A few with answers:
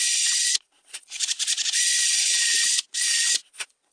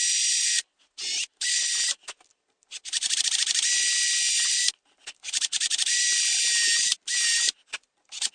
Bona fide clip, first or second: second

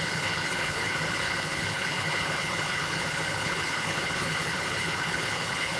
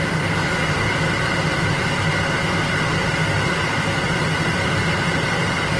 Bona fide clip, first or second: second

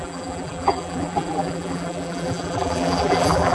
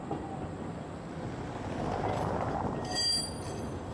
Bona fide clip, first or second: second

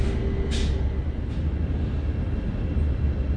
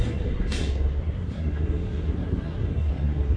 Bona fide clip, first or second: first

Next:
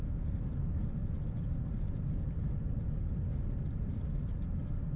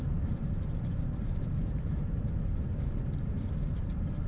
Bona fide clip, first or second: first